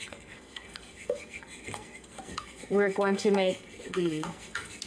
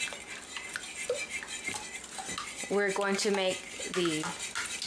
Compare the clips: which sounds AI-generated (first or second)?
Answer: first